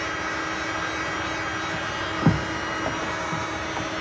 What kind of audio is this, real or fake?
real